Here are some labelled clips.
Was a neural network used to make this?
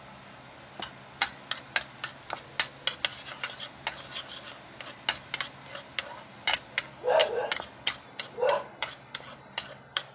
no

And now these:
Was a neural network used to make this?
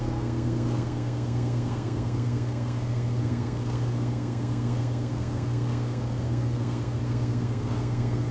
yes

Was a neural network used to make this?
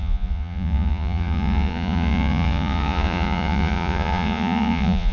yes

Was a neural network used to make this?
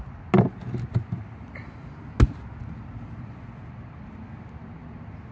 no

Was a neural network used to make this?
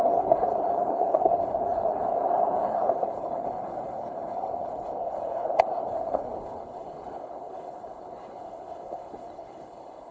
yes